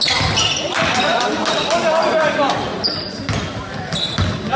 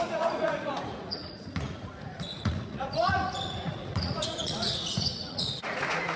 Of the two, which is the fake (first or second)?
second